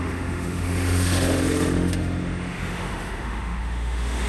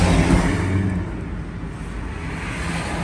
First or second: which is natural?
second